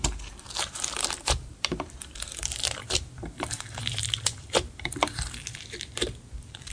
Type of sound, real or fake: fake